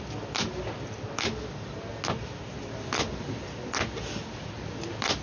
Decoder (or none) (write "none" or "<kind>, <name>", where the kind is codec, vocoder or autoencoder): none